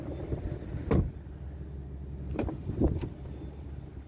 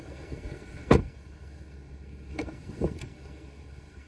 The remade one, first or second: second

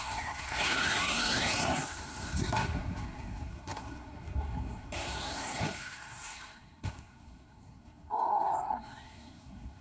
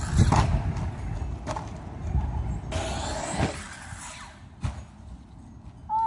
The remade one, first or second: first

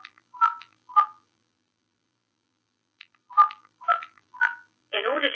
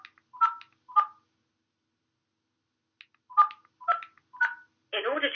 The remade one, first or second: first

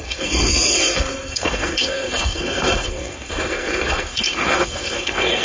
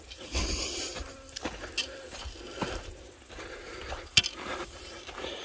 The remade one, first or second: first